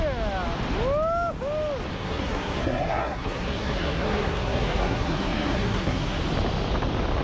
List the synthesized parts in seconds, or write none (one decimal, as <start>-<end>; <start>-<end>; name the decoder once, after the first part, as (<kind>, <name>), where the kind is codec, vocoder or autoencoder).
1.9-6.2 (codec, SNAC)